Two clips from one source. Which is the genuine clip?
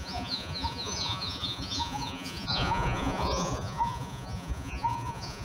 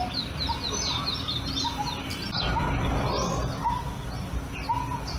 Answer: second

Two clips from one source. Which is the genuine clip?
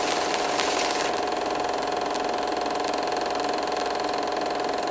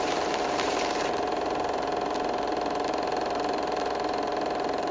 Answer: first